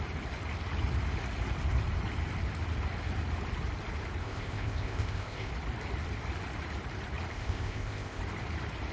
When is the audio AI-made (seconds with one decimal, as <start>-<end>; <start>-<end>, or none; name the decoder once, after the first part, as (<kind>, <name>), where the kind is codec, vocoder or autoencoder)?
4.2-5.5 (codec, ZipCodec); 7.3-8.2